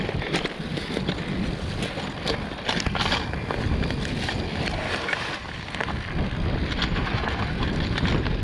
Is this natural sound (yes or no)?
yes